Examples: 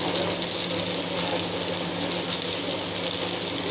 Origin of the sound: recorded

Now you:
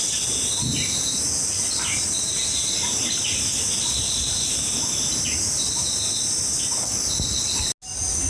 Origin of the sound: recorded